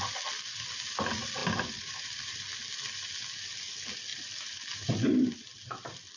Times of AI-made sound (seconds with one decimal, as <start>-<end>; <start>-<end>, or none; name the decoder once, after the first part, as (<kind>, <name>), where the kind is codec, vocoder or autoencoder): 1.4-2.5 (vocoder, BigVGAN v2); 4.1-6.2